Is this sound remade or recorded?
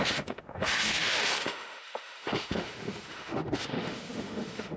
remade